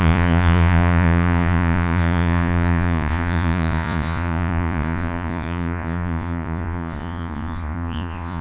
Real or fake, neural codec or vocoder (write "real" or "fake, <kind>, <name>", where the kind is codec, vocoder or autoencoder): fake, vocoder, Vocos